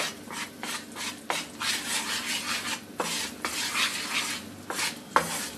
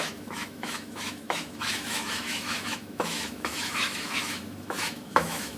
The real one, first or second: first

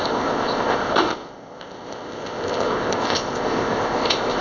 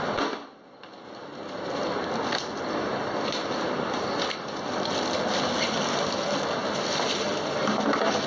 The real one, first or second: second